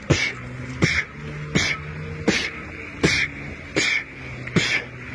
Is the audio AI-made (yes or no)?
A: no